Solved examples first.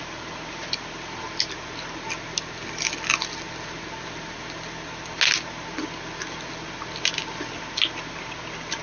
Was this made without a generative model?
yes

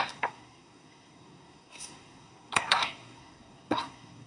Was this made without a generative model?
no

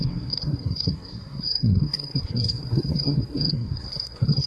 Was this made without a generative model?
no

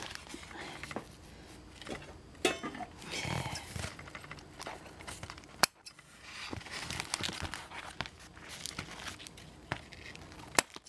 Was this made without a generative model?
yes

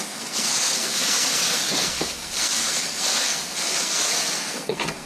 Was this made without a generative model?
no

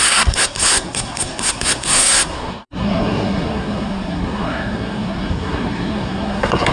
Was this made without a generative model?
no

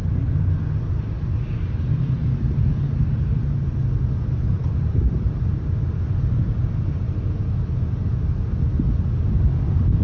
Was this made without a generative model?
yes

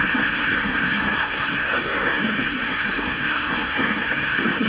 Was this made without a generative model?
no